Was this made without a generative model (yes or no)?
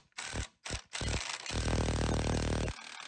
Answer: yes